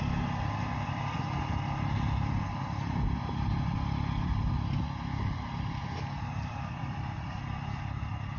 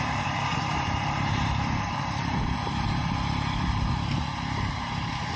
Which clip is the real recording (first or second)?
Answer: first